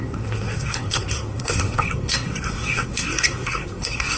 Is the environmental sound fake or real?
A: fake